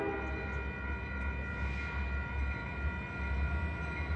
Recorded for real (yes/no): yes